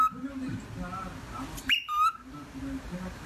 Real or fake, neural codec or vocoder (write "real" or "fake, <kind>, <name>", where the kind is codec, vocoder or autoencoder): real